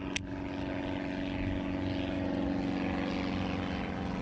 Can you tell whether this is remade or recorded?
recorded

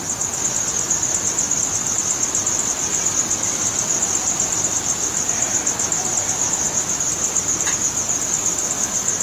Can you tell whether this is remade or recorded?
recorded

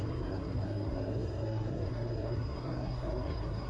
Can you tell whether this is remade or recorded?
remade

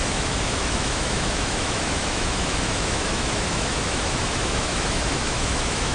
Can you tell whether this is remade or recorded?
remade